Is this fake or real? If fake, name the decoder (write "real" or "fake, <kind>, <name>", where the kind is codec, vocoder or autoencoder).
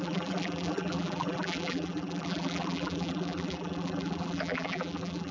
fake, vocoder, BigVGAN v2